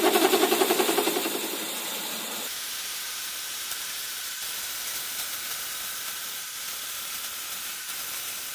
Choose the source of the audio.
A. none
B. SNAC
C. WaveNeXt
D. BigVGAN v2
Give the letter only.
D